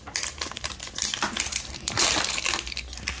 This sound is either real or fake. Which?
real